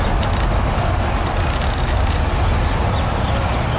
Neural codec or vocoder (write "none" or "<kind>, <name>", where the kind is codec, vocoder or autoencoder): none